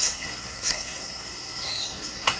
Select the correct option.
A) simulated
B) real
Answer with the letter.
A